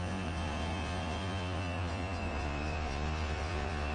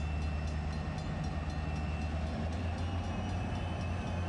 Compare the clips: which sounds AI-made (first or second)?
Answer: first